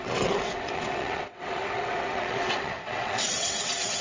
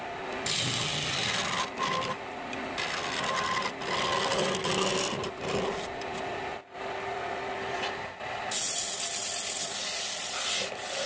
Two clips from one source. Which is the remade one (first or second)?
first